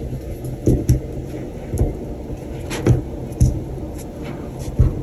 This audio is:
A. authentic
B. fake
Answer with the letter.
A